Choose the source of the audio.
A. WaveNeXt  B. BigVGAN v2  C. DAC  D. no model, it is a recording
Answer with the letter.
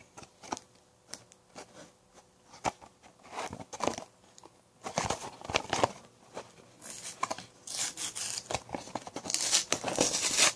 D